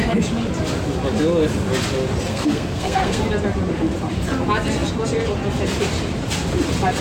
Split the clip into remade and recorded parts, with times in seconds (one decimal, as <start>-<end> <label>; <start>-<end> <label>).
0.0-2.3 recorded; 2.3-3.2 remade; 3.2-7.0 recorded